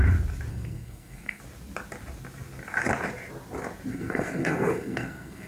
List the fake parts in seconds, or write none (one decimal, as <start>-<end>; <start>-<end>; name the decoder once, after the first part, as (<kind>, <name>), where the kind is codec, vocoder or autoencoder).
0.5-1.4 (codec, SNAC); 3.9-5.5